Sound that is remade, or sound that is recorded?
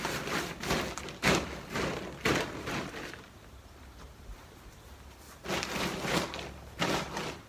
recorded